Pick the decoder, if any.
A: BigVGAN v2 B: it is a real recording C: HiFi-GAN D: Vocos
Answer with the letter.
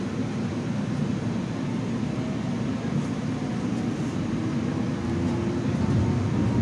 B